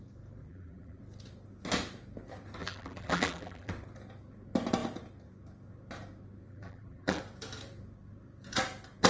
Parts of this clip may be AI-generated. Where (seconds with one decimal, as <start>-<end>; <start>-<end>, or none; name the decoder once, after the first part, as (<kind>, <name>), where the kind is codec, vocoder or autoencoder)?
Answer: 0.4-1.0 (vocoder, BigVGAN v2); 2.6-3.7; 6.5-7.2